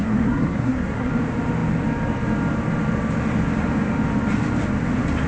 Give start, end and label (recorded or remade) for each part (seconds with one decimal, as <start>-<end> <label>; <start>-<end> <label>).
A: 0.0-1.1 remade; 1.1-5.3 recorded